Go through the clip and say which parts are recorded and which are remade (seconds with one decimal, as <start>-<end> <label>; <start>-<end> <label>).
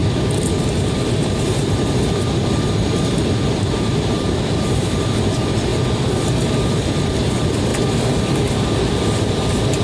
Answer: 0.0-0.6 recorded; 0.6-5.7 remade; 5.7-6.2 recorded; 6.2-7.7 remade; 7.7-8.5 recorded; 8.5-9.8 remade